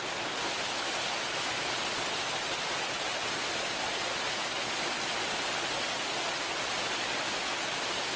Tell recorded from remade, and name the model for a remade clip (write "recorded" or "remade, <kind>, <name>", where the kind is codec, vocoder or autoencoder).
recorded